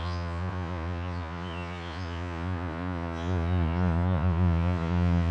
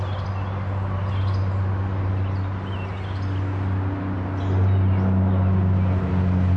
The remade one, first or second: first